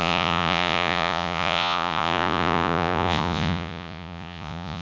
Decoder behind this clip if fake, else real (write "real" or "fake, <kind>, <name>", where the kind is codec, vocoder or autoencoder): fake, vocoder, Vocos